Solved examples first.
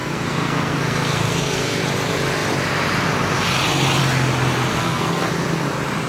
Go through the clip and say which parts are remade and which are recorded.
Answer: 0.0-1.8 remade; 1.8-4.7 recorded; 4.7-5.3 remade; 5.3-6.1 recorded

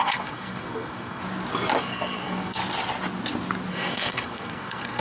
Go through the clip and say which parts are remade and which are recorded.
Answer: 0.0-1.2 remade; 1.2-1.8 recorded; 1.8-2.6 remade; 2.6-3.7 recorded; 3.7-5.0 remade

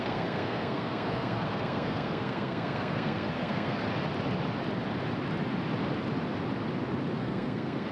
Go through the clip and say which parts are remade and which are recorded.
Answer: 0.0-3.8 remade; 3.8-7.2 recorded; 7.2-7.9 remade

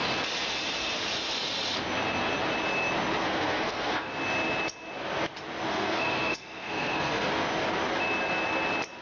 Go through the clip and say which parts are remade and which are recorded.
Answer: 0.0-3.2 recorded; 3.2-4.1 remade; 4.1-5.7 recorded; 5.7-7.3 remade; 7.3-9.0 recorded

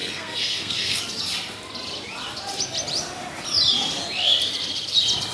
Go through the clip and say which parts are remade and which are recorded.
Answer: 0.0-1.0 remade; 1.0-5.3 recorded